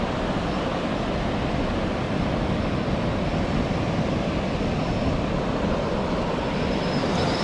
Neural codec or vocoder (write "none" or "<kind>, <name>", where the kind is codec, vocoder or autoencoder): none